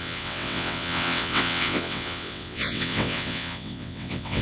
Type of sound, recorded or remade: remade